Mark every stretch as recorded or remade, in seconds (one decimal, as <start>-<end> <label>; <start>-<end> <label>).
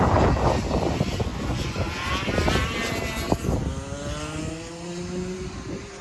0.0-1.3 recorded; 1.3-2.1 remade; 2.1-6.0 recorded